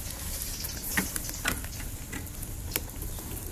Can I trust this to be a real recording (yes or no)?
yes